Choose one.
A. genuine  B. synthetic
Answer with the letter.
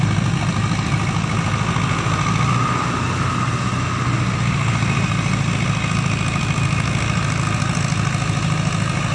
A